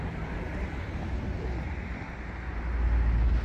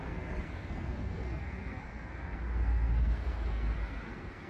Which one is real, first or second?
first